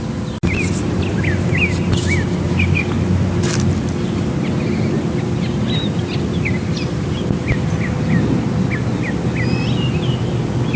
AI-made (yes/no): no